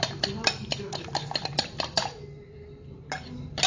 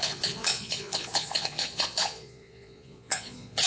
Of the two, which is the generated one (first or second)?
second